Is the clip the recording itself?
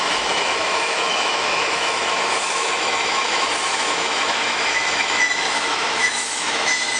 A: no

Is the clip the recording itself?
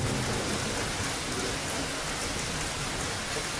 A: yes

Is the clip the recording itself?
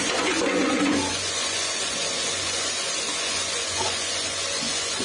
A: no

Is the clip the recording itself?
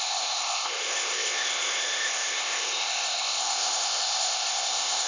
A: no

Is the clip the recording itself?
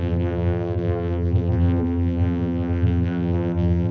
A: no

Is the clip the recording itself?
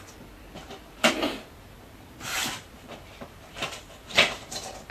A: no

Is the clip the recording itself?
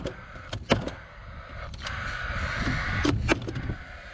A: yes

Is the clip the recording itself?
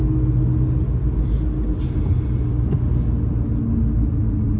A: yes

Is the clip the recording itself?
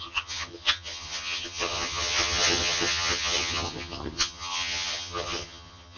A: no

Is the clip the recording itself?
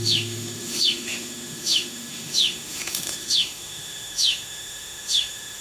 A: no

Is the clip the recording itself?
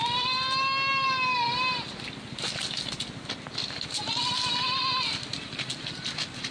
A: yes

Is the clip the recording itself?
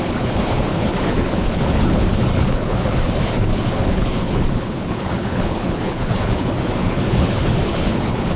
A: no